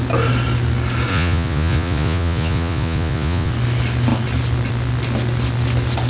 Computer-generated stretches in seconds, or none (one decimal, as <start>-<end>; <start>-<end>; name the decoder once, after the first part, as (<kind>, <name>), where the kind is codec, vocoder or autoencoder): 1.1-3.5 (vocoder, Vocos)